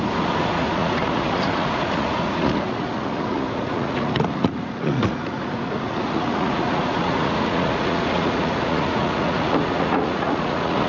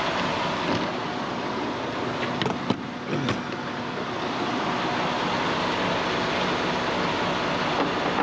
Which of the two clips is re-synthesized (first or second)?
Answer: first